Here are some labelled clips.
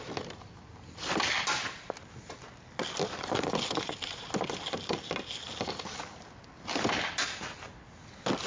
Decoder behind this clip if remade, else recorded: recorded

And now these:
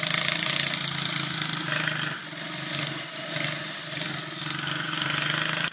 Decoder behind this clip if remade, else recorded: recorded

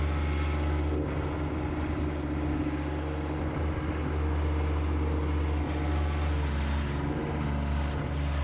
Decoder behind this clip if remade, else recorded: recorded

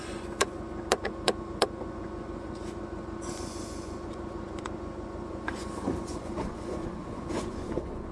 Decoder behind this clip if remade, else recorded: remade, vocoder, Vocos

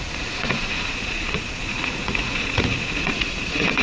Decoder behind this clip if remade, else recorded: remade, vocoder, Vocos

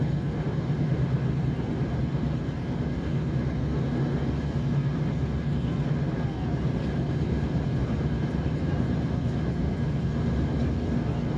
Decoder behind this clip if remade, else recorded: recorded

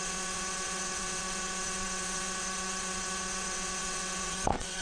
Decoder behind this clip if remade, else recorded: remade, vocoder, WaveNeXt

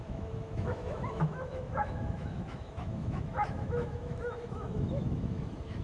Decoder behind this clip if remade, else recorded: remade, autoencoder, DAC-VAE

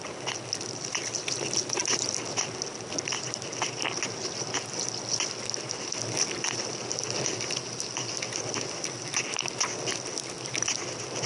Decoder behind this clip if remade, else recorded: recorded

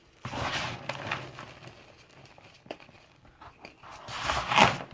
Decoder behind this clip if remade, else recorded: remade, vocoder, BigVGAN v2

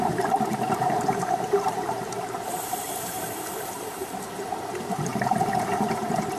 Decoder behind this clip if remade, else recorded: remade, vocoder, BigVGAN v2